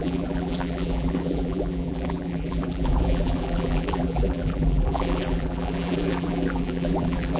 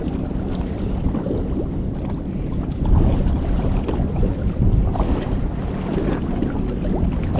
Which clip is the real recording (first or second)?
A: second